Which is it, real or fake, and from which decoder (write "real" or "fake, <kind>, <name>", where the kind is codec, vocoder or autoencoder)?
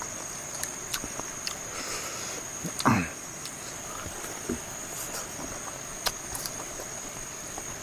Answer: real